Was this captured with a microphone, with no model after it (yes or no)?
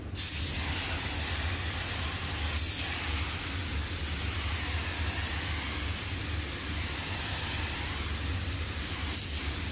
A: yes